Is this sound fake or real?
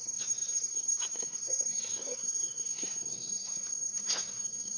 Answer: fake